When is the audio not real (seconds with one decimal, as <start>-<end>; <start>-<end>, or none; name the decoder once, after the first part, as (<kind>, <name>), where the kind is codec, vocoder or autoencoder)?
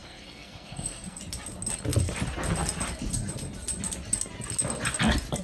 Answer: 0.0-1.2 (codec, SNAC)